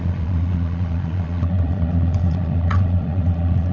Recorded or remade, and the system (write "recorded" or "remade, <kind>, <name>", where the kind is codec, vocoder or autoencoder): remade, vocoder, Vocos